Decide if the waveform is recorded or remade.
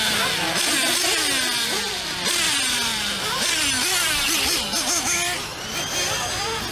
recorded